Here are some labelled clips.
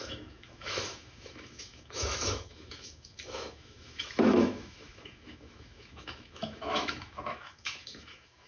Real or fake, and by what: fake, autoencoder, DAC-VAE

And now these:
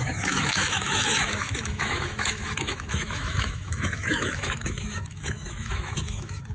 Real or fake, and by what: fake, autoencoder, DAC-VAE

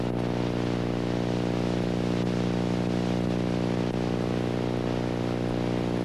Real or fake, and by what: real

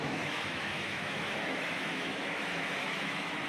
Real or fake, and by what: fake, autoencoder, DAC-VAE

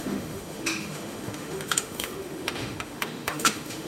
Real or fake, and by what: fake, autoencoder, DAC-VAE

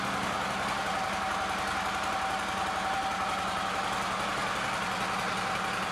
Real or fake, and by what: real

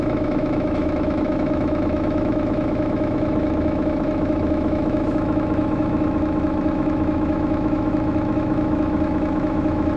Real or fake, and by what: fake, autoencoder, DAC-VAE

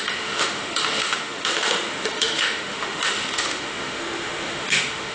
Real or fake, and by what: fake, autoencoder, DAC-VAE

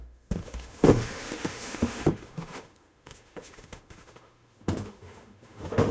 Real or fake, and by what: fake, autoencoder, DAC-VAE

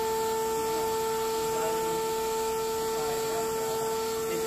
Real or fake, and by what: real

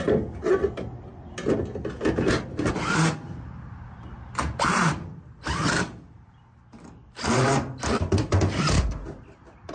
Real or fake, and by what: real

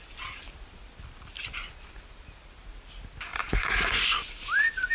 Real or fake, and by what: real